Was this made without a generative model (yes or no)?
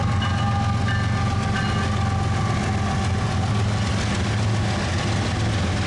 yes